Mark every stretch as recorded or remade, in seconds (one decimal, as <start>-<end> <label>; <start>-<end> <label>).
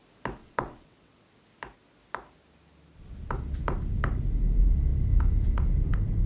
0.0-0.4 recorded; 0.4-1.2 remade; 1.2-6.3 recorded